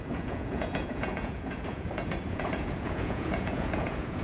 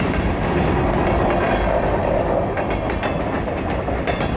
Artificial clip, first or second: first